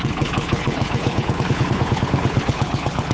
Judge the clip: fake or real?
fake